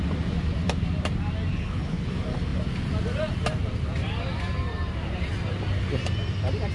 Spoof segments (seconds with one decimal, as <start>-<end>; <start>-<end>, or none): 1.5-2.1

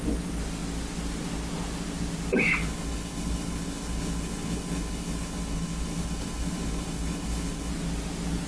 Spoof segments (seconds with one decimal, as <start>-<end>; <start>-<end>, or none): 2.6-7.7